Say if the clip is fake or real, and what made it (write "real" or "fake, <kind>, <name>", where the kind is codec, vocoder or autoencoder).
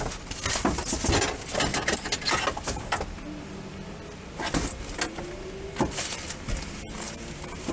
real